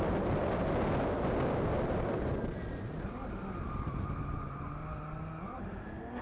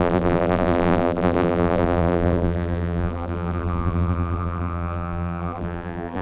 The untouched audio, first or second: first